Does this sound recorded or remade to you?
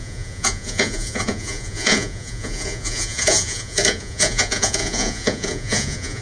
remade